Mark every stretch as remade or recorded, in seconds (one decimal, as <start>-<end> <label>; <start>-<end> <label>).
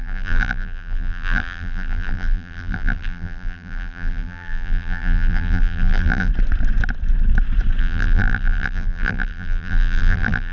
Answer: 0.0-6.3 remade; 6.3-7.8 recorded; 7.8-10.5 remade